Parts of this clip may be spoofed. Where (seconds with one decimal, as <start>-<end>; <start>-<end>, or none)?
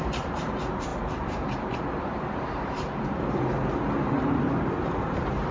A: 0.0-5.5